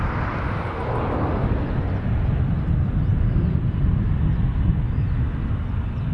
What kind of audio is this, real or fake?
real